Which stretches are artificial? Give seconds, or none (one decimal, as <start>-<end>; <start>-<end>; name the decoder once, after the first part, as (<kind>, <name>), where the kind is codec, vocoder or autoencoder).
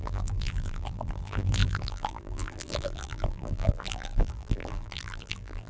0.0-5.7 (vocoder, BigVGAN v2)